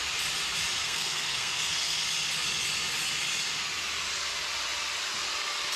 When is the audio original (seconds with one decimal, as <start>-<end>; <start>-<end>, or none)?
0.0-0.8; 2.0-5.8